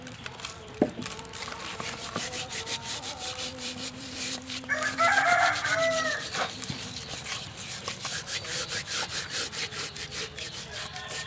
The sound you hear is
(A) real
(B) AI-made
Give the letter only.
B